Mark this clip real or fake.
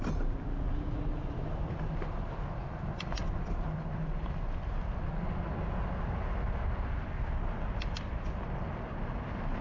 real